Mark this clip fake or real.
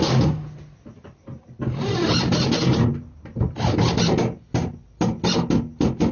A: real